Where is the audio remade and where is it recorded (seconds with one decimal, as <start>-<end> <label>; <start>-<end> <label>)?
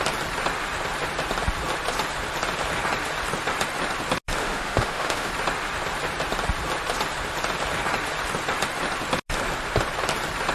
0.0-4.4 recorded; 4.4-5.3 remade; 5.3-10.5 recorded